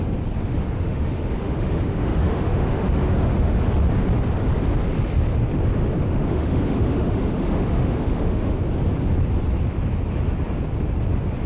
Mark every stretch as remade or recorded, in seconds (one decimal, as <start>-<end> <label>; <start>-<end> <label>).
0.0-0.5 recorded; 0.5-3.6 remade; 3.6-6.0 recorded; 6.0-8.6 remade; 8.6-11.5 recorded